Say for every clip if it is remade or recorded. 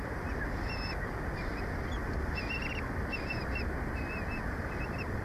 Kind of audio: recorded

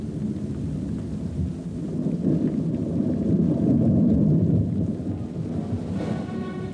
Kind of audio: recorded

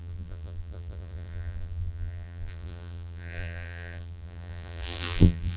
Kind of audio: remade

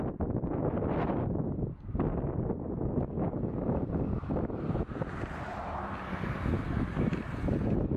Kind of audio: recorded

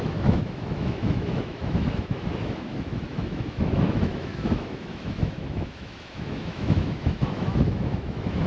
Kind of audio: remade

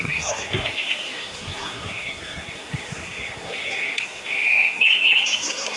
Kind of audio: remade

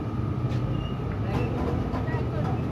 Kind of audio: recorded